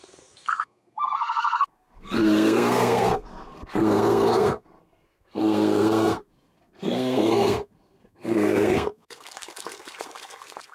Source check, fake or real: fake